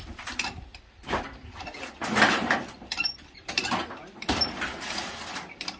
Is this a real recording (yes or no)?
no